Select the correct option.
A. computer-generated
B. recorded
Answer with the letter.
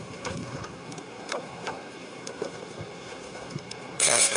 A